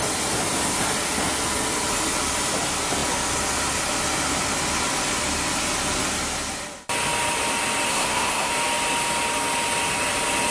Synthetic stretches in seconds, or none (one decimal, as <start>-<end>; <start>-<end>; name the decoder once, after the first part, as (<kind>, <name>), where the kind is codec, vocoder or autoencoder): 7.9-8.5 (codec, SNAC)